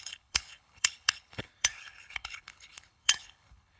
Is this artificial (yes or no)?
yes